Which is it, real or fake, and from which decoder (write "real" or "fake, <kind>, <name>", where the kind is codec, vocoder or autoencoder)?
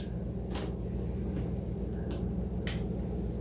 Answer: real